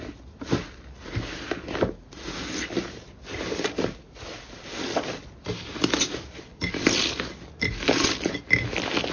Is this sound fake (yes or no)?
no